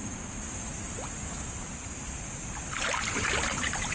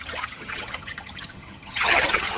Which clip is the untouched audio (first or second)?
first